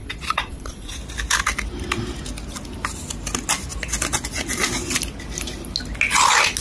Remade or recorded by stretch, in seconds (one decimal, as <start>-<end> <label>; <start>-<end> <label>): 0.0-1.0 remade; 1.0-6.6 recorded